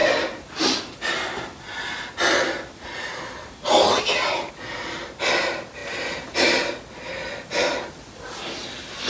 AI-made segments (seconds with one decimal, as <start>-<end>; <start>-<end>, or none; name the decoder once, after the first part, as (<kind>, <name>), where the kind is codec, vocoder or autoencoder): none